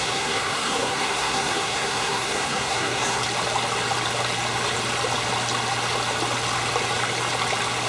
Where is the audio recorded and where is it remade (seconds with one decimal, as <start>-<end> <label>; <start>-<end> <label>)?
0.0-3.2 remade; 3.2-7.9 recorded